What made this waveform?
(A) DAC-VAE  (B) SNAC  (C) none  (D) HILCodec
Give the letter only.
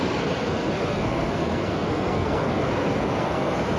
B